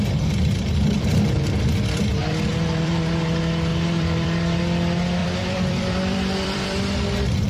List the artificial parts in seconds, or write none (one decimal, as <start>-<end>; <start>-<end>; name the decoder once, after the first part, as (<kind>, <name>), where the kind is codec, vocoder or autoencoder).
2.2-3.1 (vocoder, BigVGAN v2); 3.7-4.6; 5.2-6.8